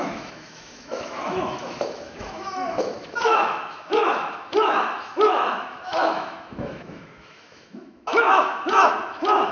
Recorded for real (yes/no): no